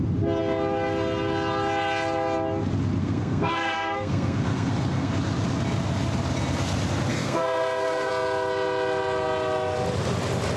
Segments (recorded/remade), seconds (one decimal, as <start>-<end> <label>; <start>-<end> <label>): 0.0-3.0 recorded; 3.0-5.1 remade; 5.1-7.1 recorded; 7.1-8.1 remade; 8.1-10.6 recorded